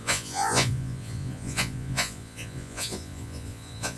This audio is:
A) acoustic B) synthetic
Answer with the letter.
B